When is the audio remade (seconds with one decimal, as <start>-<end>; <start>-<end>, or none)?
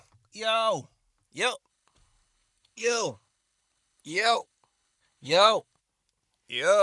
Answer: 1.7-5.8